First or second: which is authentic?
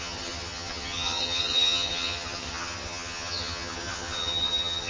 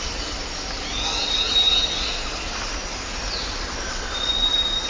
second